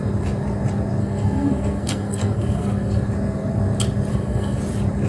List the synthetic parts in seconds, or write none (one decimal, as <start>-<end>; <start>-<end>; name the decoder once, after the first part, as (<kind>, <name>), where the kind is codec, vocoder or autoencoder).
1.0-3.0 (codec, SNAC); 4.1-4.6